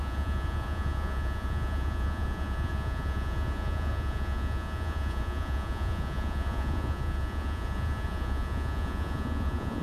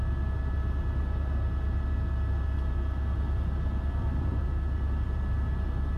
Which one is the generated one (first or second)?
first